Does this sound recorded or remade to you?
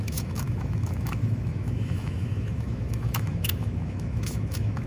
remade